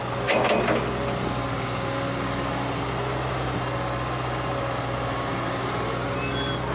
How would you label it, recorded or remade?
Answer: recorded